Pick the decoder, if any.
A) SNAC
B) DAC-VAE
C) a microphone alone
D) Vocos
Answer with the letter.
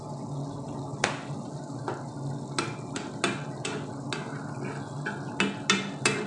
C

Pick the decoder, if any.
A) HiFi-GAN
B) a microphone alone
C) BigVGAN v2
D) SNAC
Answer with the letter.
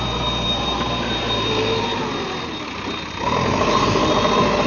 B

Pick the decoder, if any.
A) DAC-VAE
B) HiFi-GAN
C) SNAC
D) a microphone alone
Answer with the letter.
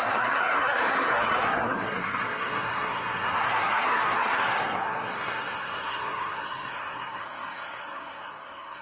C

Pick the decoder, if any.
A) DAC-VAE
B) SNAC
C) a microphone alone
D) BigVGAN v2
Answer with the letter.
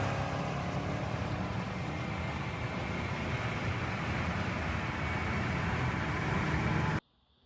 C